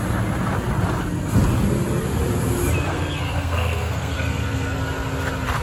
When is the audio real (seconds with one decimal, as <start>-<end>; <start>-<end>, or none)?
0.0-2.9; 4.8-5.6